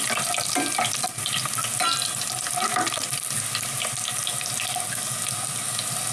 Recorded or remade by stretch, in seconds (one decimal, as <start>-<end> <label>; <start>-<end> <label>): 0.0-6.1 recorded